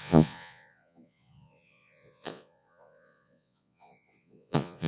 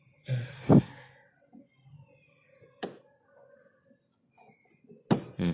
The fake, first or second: first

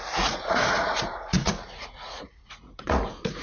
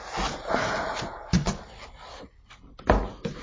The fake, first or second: first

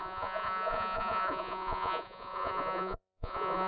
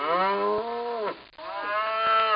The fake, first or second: first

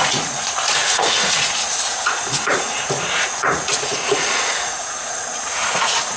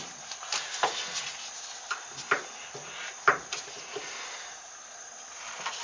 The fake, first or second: first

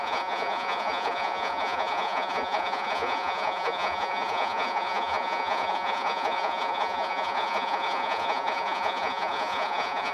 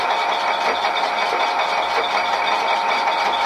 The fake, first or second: first